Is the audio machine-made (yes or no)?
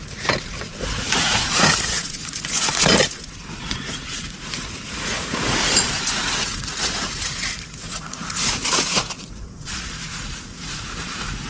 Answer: yes